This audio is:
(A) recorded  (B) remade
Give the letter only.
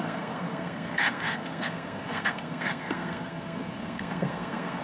B